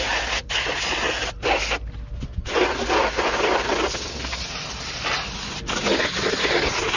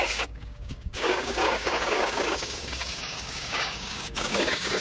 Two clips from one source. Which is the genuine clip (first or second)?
first